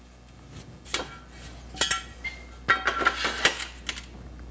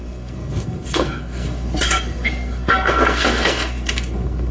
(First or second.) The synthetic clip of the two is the second